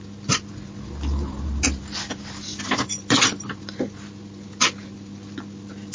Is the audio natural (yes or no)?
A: yes